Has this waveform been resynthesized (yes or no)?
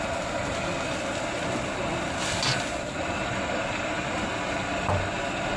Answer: no